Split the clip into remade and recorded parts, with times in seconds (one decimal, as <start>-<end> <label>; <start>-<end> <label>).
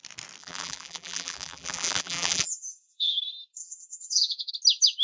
0.0-0.4 recorded; 0.4-3.2 remade; 3.2-3.6 recorded; 3.6-4.5 remade; 4.5-5.0 recorded